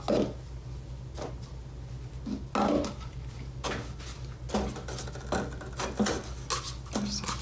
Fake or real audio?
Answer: real